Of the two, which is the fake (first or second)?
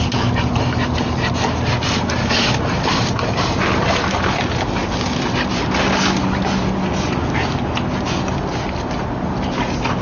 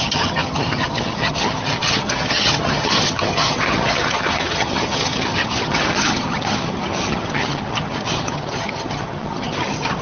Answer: second